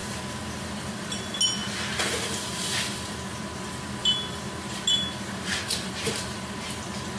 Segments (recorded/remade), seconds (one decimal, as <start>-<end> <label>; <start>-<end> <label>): 0.0-7.2 recorded